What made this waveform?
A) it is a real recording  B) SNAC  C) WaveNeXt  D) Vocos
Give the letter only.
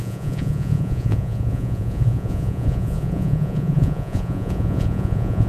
D